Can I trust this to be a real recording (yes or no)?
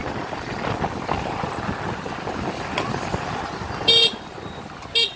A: yes